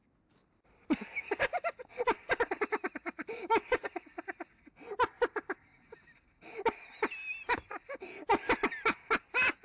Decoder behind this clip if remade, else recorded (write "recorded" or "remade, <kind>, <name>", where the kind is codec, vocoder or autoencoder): recorded